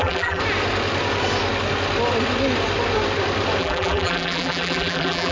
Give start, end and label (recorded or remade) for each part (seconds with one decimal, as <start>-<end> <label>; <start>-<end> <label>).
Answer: 0.0-0.4 remade; 0.4-3.6 recorded; 3.6-5.3 remade

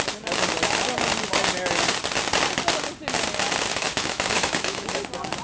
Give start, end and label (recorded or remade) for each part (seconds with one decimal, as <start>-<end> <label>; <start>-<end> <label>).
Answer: 0.0-3.7 recorded; 3.7-4.9 remade; 4.9-5.4 recorded